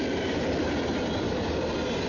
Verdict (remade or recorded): recorded